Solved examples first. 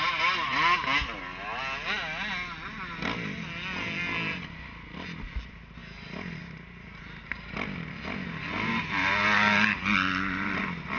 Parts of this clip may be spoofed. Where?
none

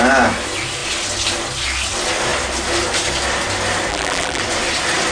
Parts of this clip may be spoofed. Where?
3.9-4.4 (vocoder, BigVGAN v2)